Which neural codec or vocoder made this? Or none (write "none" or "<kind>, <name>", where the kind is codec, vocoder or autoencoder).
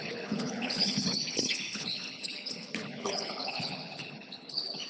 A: codec, HILCodec